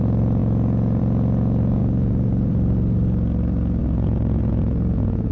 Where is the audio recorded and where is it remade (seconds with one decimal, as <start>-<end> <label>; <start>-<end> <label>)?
0.0-1.8 recorded; 1.8-2.5 remade; 2.5-3.8 recorded; 3.8-5.3 remade